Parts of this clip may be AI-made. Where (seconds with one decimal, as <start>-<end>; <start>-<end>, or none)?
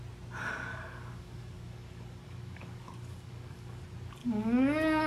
0.7-3.8; 4.2-5.1